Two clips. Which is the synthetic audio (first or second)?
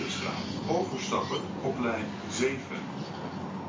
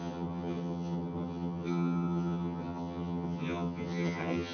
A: second